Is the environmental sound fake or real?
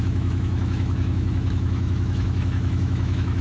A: fake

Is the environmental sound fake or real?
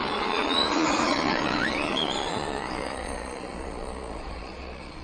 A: fake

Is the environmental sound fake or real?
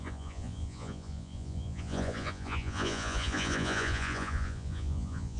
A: fake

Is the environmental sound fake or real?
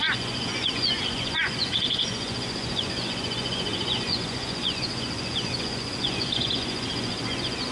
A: fake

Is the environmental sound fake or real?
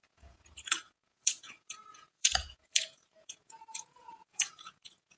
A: fake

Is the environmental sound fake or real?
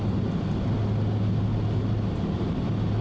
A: real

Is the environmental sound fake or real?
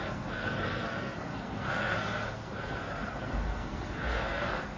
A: fake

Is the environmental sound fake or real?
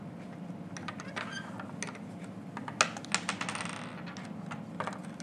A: real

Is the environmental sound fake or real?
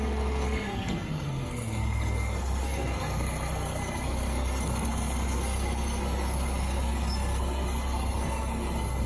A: fake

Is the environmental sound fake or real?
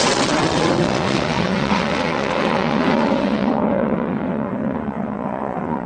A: fake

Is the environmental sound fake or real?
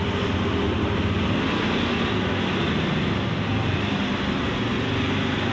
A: real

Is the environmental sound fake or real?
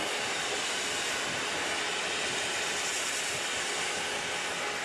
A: real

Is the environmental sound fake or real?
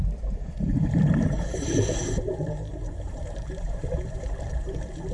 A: fake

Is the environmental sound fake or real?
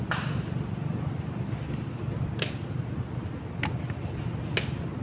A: real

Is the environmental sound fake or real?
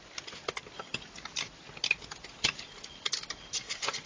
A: real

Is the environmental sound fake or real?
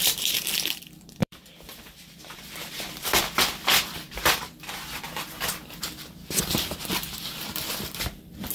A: fake